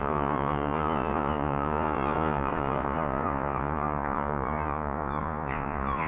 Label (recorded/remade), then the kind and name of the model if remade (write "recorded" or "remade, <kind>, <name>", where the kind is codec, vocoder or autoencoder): remade, vocoder, Vocos